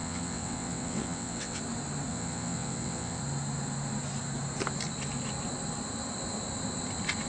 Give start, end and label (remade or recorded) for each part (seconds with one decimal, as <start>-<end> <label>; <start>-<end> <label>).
0.0-1.6 remade; 1.6-2.1 recorded; 2.1-3.2 remade; 3.2-7.3 recorded